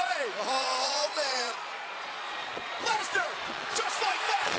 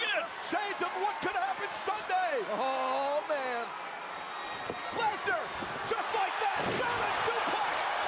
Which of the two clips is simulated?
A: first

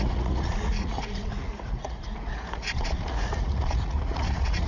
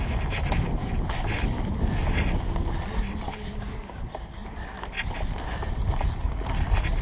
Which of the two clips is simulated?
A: first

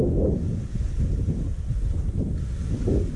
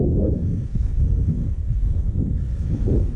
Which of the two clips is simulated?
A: second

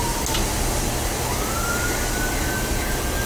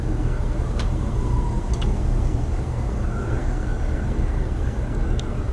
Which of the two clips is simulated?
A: second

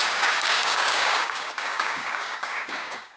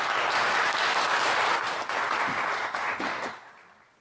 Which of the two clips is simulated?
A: first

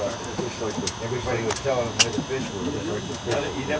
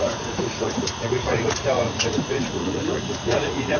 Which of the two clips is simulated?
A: second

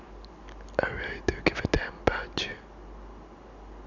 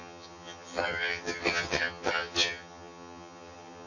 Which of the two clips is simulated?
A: second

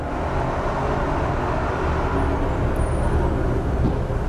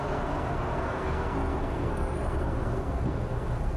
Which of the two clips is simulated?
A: second